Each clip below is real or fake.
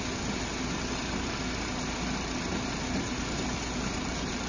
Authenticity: real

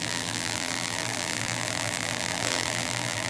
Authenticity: fake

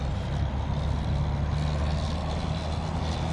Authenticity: real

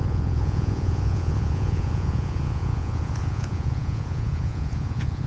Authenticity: fake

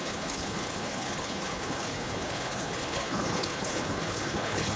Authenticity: fake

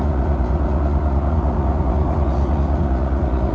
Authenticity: fake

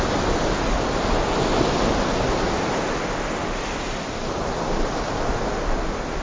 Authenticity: real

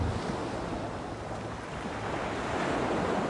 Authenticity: real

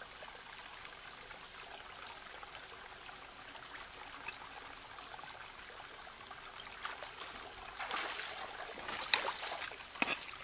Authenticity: real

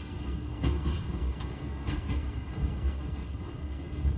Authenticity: fake